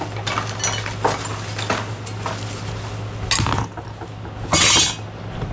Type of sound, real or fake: real